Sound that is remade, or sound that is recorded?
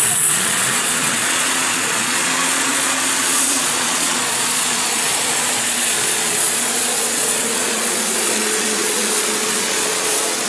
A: remade